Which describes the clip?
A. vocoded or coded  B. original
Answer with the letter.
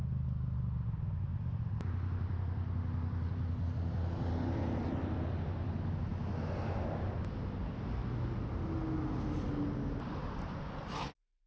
B